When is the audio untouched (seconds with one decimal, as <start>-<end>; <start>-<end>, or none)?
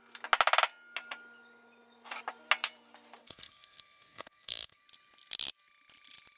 0.0-3.2; 4.8-6.4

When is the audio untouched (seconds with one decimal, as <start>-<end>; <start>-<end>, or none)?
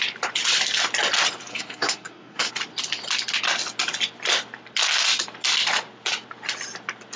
0.0-1.5; 2.5-7.2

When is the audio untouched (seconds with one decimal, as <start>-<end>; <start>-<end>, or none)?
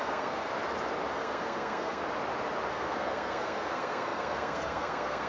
0.5-1.1; 2.0-2.7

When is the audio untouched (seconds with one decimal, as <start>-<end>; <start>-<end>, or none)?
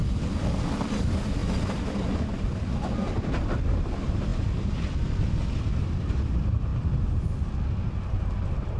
0.0-8.8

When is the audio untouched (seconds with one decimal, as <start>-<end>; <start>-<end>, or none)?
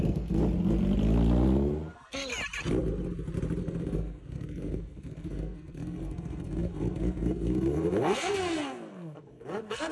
0.4-1.9; 2.3-3.6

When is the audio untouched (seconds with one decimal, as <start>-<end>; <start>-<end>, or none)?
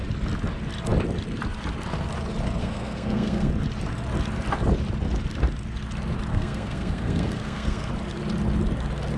0.0-2.6; 3.5-6.3; 7.9-9.2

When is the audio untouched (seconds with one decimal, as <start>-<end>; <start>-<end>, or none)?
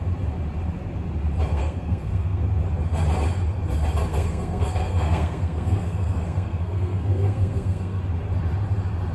0.0-1.5; 2.4-4.1; 8.0-9.1